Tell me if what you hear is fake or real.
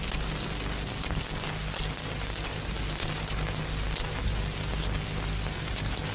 real